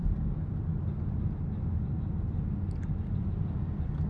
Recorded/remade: recorded